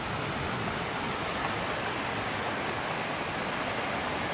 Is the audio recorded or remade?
recorded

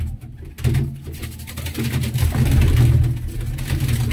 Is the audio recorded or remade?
recorded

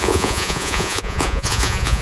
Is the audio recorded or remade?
remade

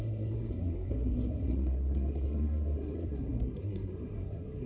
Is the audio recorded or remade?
remade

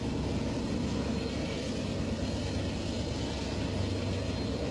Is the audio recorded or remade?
recorded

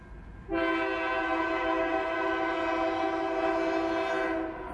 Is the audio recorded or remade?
recorded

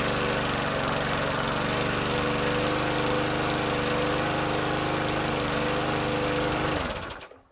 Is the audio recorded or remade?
recorded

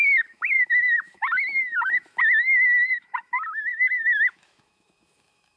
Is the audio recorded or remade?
remade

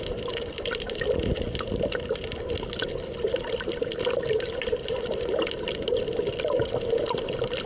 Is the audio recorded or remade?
recorded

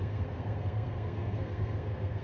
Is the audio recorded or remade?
remade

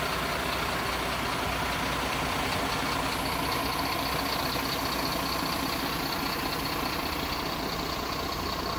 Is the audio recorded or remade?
recorded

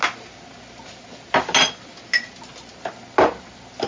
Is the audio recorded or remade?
recorded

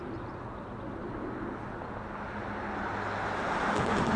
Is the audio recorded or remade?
recorded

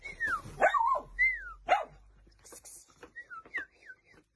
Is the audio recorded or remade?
recorded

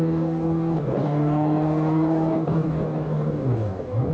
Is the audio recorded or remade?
remade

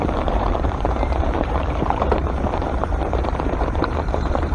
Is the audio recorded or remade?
remade